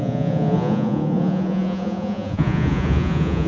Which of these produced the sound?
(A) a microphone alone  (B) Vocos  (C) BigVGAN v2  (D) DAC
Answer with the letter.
B